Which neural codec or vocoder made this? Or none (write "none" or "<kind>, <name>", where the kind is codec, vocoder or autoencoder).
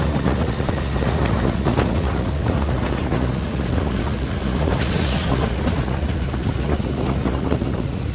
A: vocoder, Vocos